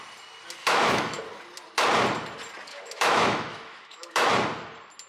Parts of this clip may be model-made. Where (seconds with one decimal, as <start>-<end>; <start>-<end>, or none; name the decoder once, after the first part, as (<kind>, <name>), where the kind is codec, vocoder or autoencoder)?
0.6-1.2 (autoencoder, DAC-VAE); 2.7-4.3